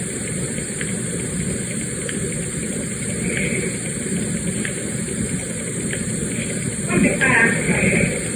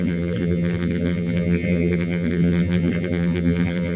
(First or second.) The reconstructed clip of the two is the second